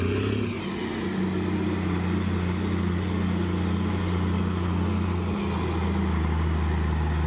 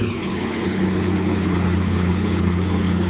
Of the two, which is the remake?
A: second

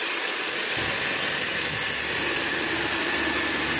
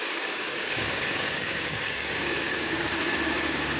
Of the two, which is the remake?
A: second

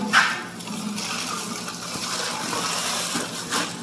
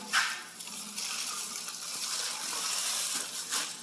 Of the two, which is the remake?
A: second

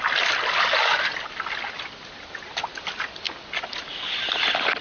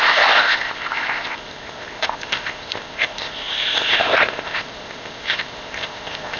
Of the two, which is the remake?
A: second